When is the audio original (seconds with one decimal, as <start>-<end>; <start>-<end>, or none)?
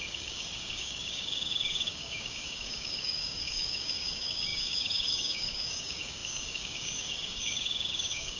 none